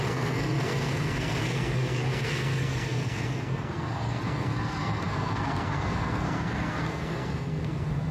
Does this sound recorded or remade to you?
remade